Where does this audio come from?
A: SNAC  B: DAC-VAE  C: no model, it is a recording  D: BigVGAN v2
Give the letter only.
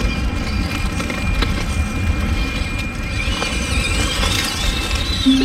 C